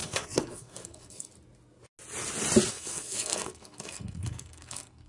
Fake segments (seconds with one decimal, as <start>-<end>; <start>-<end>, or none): 0.0-1.3; 2.7-5.1